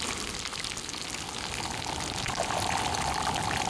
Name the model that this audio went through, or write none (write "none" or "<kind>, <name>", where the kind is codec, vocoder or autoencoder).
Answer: none